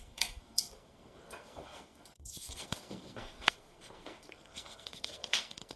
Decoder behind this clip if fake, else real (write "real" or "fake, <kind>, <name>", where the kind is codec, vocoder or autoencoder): fake, codec, SNAC